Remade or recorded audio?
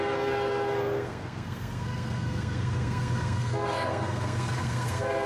remade